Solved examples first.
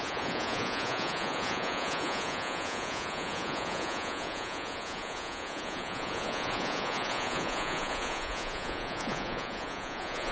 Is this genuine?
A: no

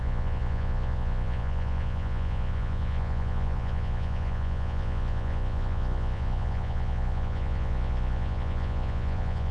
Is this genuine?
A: no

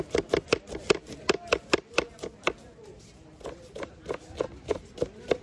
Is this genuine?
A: yes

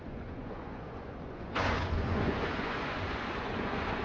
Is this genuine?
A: no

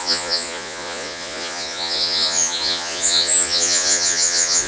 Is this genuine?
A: no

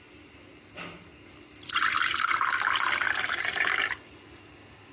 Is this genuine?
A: yes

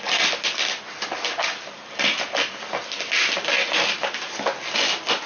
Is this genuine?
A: yes